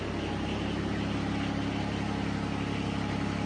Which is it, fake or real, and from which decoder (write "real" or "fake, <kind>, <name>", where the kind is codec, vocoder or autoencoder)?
real